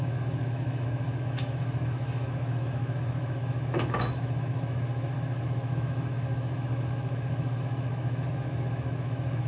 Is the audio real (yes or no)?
no